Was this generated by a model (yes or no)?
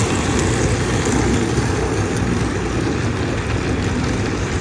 no